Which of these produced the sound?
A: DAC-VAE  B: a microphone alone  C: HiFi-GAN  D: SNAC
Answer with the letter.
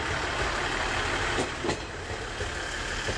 B